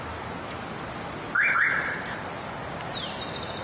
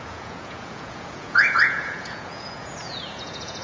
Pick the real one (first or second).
first